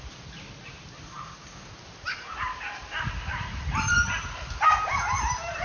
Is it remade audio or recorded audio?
recorded